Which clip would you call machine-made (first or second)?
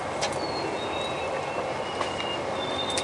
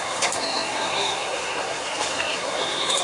second